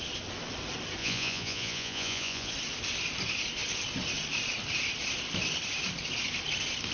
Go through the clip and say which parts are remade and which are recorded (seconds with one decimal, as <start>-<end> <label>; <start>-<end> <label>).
0.0-1.0 recorded; 1.0-2.5 remade; 2.5-6.9 recorded